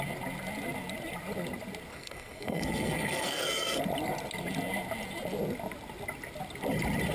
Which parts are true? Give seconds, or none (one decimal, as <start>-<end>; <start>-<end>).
0.0-1.9; 3.8-7.1